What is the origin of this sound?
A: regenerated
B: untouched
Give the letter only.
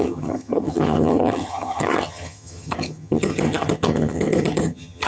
A